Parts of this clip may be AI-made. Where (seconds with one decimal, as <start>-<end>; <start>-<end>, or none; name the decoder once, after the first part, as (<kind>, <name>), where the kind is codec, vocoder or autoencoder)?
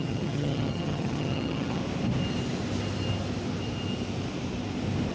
0.0-1.8 (vocoder, HiFi-GAN)